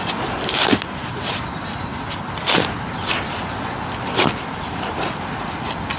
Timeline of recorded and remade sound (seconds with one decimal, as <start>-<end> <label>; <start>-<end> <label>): 0.0-1.9 recorded; 1.9-5.1 remade; 5.1-6.0 recorded